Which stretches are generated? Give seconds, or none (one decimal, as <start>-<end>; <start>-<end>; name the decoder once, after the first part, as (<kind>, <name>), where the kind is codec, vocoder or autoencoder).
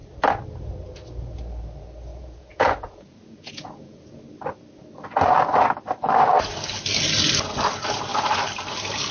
2.1-4.2 (vocoder, Vocos)